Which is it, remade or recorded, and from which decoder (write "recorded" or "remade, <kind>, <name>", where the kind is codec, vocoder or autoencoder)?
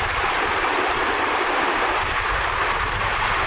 remade, vocoder, BigVGAN v2